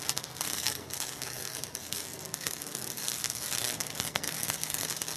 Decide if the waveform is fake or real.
fake